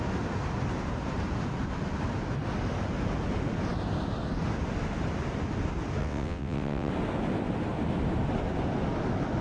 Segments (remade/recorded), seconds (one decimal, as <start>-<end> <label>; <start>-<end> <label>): 0.0-6.0 recorded; 6.0-6.9 remade; 6.9-9.4 recorded